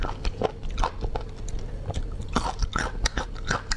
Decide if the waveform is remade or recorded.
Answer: recorded